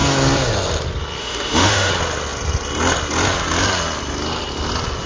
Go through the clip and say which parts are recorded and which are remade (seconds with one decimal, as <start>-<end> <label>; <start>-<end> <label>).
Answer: 0.0-1.2 recorded; 1.2-1.9 remade; 1.9-5.1 recorded